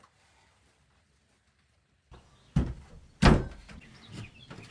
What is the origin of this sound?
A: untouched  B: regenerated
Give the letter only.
A